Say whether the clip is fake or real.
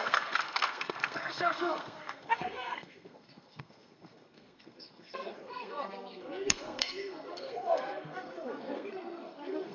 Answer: fake